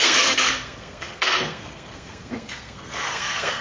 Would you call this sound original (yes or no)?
no